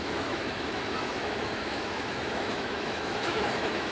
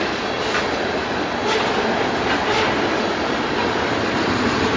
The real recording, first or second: second